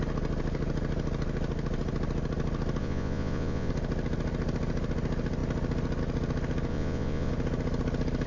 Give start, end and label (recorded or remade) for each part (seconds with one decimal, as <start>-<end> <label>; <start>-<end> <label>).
0.0-2.8 recorded; 2.8-3.7 remade; 3.7-6.7 recorded; 6.7-7.3 remade; 7.3-8.3 recorded

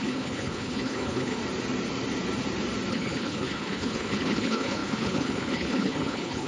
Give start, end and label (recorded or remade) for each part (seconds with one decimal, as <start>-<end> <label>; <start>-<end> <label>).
0.0-1.4 remade; 1.4-2.9 recorded; 2.9-6.5 remade